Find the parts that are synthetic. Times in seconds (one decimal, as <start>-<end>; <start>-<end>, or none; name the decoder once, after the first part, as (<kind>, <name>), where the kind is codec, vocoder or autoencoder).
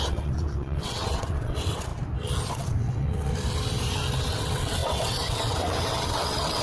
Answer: 0.0-1.9 (vocoder, WaveNeXt); 2.5-3.3; 4.2-6.6